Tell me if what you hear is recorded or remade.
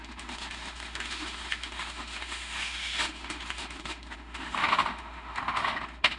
remade